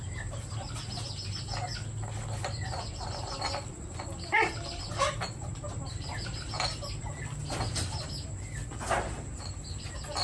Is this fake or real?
real